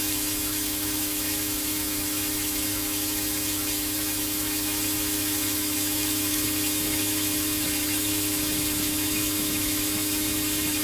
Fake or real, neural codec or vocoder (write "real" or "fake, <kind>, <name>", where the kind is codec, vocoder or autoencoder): fake, autoencoder, DAC-VAE